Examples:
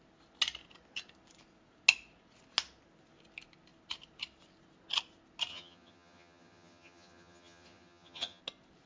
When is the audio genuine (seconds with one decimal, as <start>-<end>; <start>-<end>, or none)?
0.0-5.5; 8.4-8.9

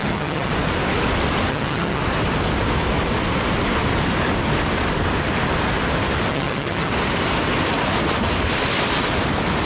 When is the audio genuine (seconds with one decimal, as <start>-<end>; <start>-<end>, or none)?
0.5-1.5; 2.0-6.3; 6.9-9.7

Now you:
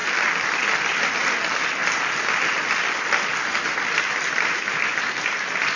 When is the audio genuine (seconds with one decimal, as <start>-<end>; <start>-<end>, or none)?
0.0-5.8

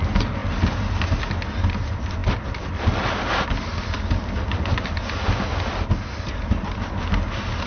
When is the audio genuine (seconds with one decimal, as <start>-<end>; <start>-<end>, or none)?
0.0-7.7

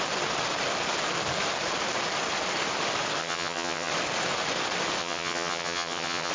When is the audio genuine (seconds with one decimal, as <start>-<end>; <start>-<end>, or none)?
0.0-3.2; 3.9-5.0